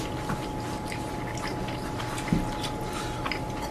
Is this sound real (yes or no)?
yes